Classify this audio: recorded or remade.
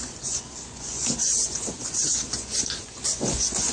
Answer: remade